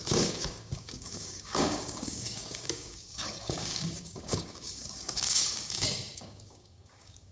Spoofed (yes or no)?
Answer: yes